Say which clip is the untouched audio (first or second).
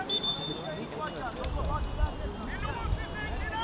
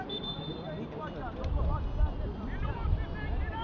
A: first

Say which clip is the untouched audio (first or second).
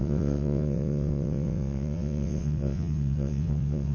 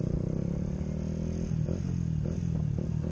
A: second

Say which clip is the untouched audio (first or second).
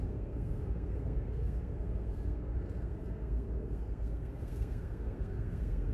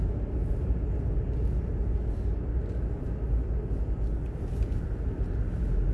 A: second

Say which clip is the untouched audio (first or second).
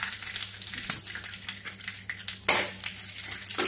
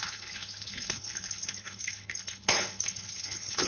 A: first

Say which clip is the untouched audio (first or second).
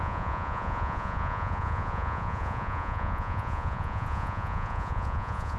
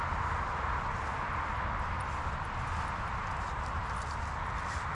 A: second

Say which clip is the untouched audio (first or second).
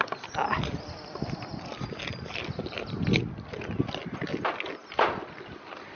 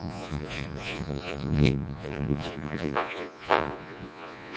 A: first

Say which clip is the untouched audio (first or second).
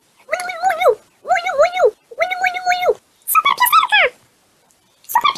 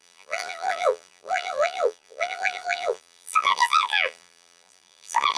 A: first